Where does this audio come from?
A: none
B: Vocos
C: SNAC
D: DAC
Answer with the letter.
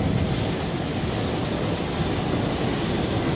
A